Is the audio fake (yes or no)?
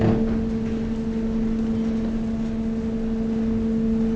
no